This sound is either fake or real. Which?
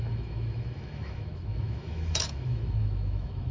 fake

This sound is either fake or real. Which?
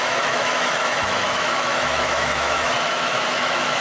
fake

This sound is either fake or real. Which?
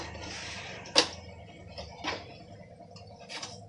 real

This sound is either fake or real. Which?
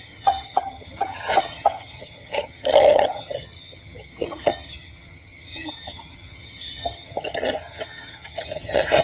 fake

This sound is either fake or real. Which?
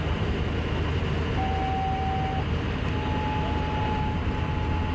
real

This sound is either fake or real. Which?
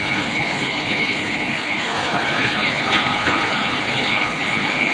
fake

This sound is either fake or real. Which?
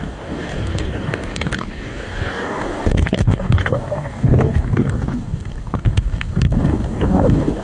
fake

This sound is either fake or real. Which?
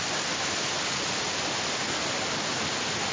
real